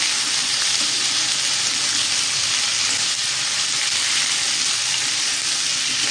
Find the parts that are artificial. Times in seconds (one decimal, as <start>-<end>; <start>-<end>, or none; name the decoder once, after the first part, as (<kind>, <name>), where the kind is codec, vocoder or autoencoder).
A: 0.4-1.7 (vocoder, BigVGAN v2)